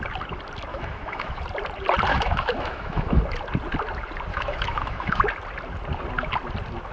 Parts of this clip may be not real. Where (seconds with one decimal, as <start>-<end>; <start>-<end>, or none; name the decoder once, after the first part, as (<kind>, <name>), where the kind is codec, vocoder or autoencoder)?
0.7-1.4 (autoencoder, DAC-VAE); 2.1-3.2; 4.3-5.2